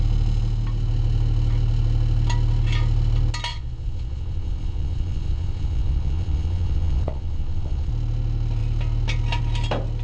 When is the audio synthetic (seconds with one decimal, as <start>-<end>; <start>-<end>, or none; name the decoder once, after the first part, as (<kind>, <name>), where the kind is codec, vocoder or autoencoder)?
3.5-7.9 (vocoder, Vocos)